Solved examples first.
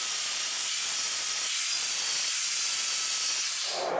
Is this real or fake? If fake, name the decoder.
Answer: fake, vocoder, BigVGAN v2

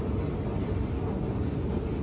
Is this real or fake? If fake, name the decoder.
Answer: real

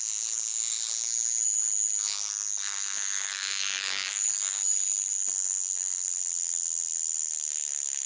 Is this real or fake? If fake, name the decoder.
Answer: real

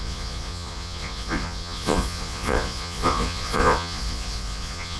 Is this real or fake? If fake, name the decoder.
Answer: fake, vocoder, Vocos